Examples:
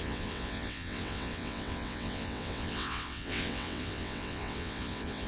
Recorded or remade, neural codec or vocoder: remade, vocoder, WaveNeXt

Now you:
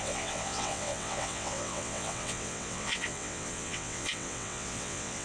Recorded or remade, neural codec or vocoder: remade, vocoder, WaveNeXt